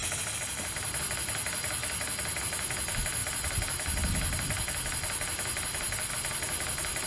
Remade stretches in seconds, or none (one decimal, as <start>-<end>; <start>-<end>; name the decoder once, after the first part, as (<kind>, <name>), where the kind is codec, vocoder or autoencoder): none